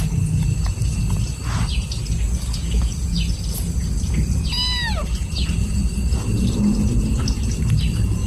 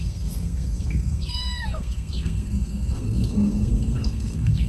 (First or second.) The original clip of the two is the first